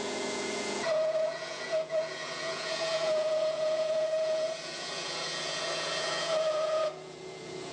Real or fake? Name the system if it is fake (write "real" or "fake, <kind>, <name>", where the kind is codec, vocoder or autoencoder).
fake, vocoder, Vocos